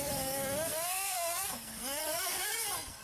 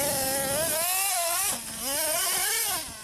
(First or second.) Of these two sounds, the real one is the second